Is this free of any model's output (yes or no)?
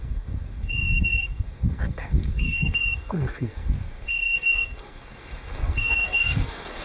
no